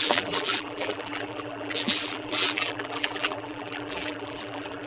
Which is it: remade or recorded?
remade